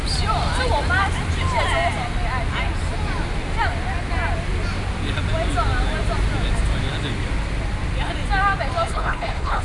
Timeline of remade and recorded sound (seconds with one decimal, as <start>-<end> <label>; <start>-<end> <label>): 0.0-8.9 recorded; 8.9-9.6 remade

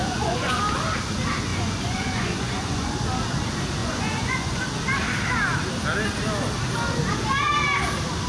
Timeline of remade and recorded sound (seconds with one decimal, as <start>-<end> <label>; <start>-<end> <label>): 0.0-0.6 remade; 0.6-1.5 recorded; 1.5-2.9 remade; 2.9-3.8 recorded; 3.8-4.6 remade; 4.6-8.3 recorded

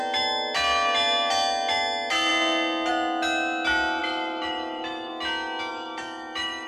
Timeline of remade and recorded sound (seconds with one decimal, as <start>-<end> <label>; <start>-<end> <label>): 0.0-4.0 recorded; 4.0-5.1 remade; 5.1-5.7 recorded; 5.7-6.7 remade